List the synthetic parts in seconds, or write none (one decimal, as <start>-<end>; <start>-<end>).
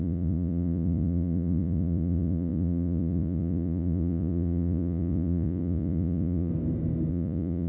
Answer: 0.0-6.5; 7.1-7.7